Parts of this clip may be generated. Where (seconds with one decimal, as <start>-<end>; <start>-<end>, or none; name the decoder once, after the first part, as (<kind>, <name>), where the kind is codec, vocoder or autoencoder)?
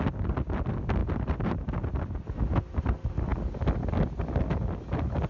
none